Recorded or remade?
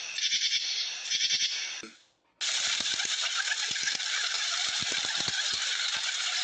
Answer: recorded